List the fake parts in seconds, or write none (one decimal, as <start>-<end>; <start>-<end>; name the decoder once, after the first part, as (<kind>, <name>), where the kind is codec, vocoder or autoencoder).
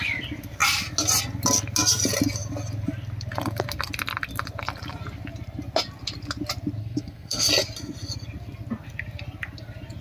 6.8-7.5 (codec, SNAC)